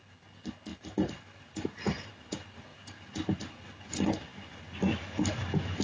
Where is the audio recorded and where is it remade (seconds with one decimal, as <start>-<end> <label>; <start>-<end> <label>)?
0.0-0.7 recorded; 0.7-2.1 remade; 2.1-2.7 recorded; 2.7-3.5 remade; 3.5-5.8 recorded